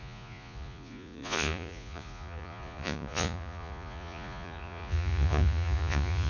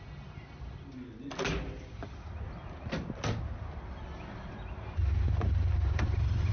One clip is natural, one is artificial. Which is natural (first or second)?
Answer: second